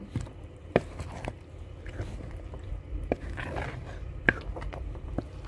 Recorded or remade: remade